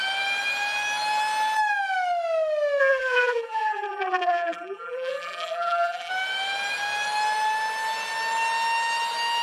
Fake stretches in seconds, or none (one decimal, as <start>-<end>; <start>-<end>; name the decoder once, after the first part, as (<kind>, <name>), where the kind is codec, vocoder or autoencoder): 2.8-6.1 (vocoder, BigVGAN v2)